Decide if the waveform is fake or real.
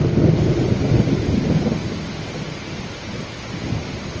real